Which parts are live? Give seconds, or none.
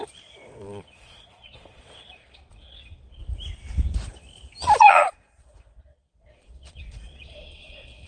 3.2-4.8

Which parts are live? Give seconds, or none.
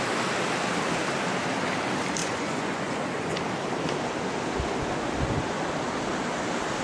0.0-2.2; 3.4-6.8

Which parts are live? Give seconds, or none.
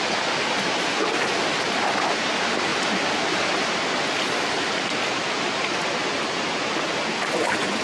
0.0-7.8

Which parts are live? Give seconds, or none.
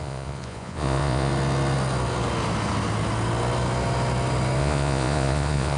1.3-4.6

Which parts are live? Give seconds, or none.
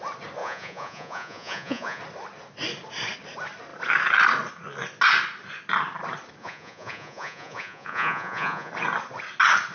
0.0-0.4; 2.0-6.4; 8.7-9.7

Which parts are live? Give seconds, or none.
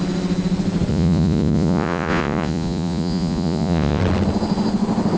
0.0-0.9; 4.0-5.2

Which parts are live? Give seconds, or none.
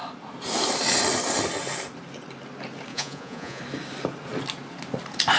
0.0-2.9; 3.6-5.4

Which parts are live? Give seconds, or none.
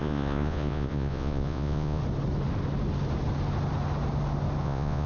2.0-4.6